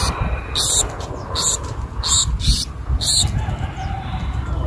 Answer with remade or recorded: recorded